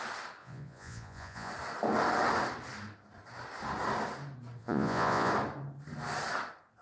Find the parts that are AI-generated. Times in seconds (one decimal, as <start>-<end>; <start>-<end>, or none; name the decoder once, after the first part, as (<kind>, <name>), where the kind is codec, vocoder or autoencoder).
0.4-1.5 (vocoder, Vocos); 4.6-5.3